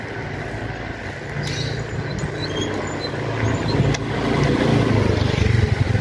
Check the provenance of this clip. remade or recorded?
recorded